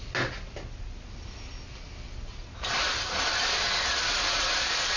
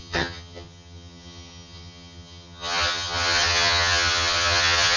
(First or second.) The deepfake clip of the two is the second